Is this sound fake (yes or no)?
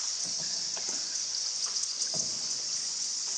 yes